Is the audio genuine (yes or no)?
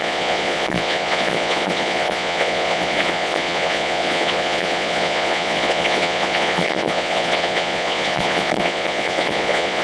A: no